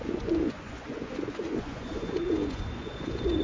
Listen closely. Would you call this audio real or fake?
fake